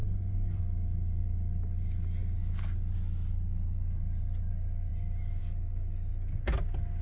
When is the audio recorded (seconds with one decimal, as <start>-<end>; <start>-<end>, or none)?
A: 0.6-7.0